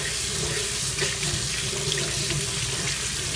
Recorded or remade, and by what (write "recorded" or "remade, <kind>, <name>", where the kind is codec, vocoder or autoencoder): recorded